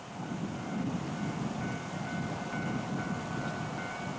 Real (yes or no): yes